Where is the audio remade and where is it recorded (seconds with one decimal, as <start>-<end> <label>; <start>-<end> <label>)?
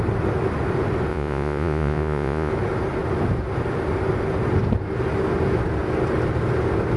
0.0-1.1 recorded; 1.1-2.5 remade; 2.5-7.0 recorded